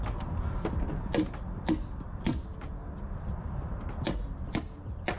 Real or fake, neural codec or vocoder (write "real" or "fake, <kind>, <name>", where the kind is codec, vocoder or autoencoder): real